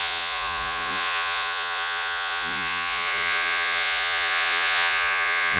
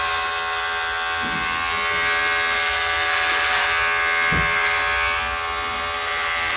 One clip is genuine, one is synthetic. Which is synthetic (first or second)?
first